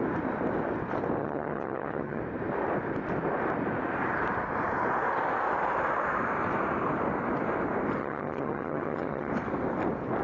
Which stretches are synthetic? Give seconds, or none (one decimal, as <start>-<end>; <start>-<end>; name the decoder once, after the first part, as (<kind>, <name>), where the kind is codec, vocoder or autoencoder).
1.2-2.2 (vocoder, HiFi-GAN); 8.0-9.3